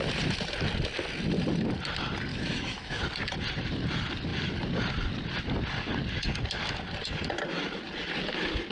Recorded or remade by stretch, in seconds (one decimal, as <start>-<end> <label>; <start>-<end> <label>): 0.0-2.3 recorded; 2.3-3.0 remade; 3.0-8.7 recorded

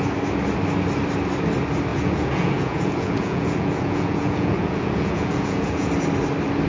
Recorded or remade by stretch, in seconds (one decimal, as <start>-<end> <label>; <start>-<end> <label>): 0.0-1.9 recorded; 1.9-5.9 remade; 5.9-6.7 recorded

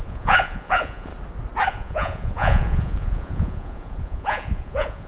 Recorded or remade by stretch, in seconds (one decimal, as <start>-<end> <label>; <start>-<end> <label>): 0.0-1.1 remade; 1.1-1.7 recorded; 1.7-5.1 remade

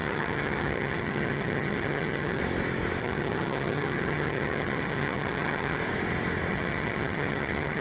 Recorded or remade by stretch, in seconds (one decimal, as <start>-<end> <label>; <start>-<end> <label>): 0.0-2.4 remade; 2.4-3.0 recorded; 3.0-5.8 remade; 5.8-6.5 recorded; 6.5-7.8 remade

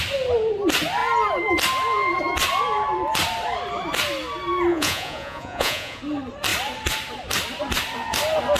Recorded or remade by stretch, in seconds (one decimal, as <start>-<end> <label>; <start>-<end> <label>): 0.0-4.7 recorded; 4.7-6.0 remade; 6.0-8.6 recorded